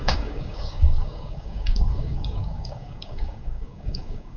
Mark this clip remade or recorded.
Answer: remade